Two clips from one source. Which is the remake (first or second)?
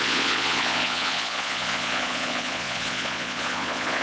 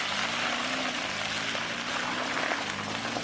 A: first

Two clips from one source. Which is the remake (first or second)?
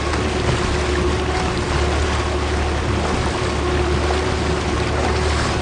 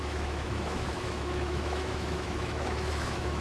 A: second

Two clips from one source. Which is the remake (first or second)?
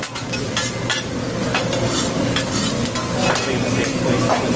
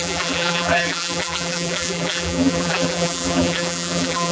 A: second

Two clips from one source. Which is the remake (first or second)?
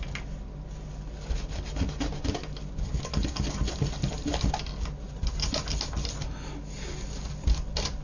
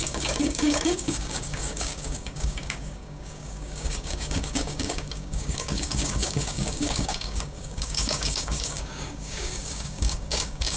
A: second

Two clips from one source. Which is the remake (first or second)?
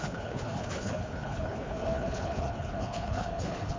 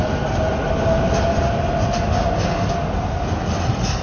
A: first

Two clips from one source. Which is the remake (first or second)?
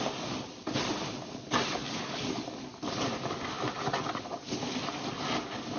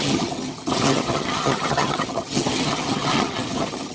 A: second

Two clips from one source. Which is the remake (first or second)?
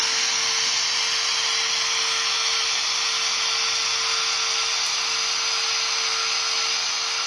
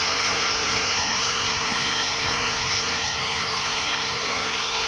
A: second